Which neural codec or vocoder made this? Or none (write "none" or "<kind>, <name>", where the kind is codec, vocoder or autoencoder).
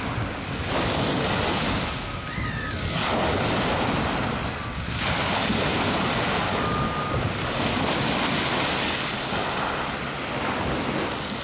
none